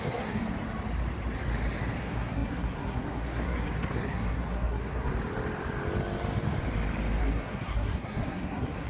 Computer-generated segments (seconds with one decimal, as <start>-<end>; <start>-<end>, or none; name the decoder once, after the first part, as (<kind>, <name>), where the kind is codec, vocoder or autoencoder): 0.0-0.4 (codec, SNAC); 2.0-5.1; 7.2-8.9